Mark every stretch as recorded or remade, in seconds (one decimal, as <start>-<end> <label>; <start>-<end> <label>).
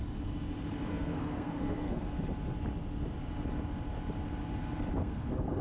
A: 0.0-0.9 recorded; 0.9-2.1 remade; 2.1-5.0 recorded; 5.0-5.6 remade